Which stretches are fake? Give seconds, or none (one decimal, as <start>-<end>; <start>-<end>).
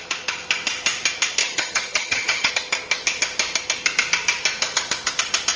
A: 1.4-2.5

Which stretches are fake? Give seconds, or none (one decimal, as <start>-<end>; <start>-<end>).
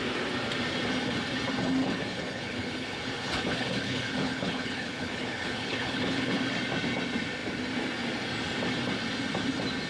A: 1.8-6.4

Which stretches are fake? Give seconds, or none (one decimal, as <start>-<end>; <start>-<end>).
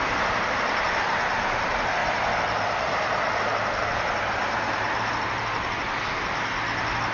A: none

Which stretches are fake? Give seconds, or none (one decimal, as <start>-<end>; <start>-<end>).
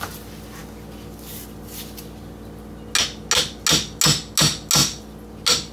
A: none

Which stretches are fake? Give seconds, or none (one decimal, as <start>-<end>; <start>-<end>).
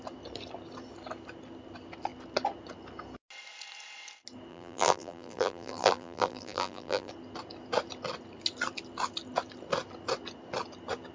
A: 4.5-7.1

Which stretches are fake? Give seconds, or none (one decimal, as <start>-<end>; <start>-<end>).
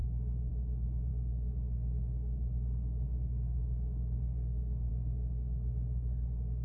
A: none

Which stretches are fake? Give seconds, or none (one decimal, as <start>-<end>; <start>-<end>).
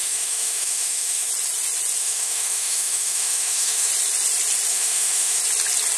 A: 0.0-1.3; 2.0-3.9; 4.7-5.4